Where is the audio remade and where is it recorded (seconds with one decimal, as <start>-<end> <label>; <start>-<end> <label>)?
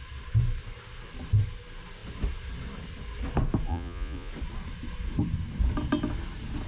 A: 0.0-3.7 recorded; 3.7-4.3 remade; 4.3-6.7 recorded